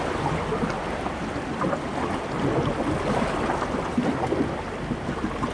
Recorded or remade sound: recorded